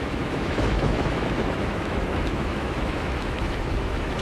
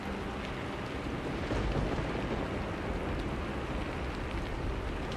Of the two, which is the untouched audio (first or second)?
second